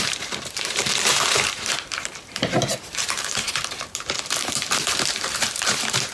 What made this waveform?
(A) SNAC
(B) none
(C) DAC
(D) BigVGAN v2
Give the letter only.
D